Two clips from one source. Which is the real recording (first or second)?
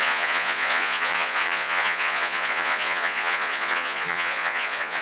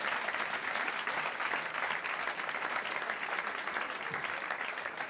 second